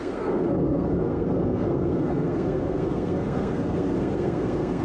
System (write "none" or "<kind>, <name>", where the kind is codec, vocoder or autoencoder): codec, SNAC